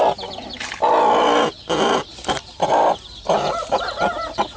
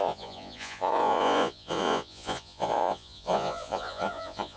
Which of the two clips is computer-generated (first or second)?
second